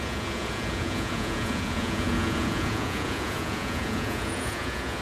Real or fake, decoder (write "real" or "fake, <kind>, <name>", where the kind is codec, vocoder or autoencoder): fake, vocoder, Vocos